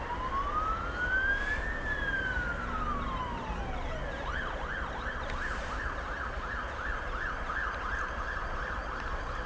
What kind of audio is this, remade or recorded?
recorded